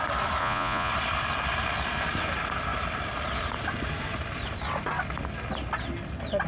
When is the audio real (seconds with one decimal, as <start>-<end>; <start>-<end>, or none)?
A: 0.0-0.4; 0.9-6.5